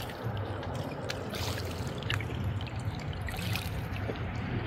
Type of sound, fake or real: fake